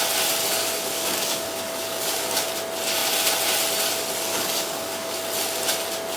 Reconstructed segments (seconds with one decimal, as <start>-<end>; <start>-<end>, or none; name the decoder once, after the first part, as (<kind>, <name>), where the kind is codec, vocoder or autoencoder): 0.4-2.5 (codec, DAC); 4.3-5.2